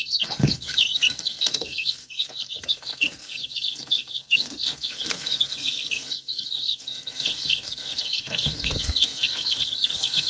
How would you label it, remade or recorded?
remade